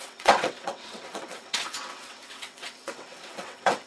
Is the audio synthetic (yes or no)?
yes